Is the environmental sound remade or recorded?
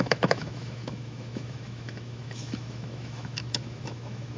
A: remade